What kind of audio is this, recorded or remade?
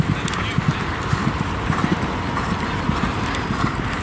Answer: recorded